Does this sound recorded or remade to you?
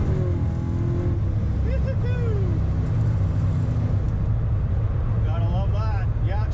recorded